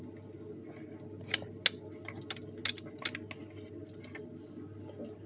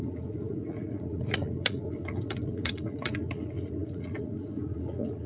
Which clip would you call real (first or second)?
first